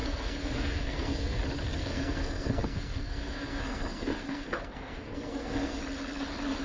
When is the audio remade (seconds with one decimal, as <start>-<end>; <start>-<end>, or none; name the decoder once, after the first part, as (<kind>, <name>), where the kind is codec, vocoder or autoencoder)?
0.0-1.4 (codec, SNAC); 1.8-5.8